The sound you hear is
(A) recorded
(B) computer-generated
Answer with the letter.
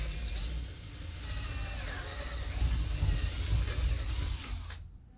A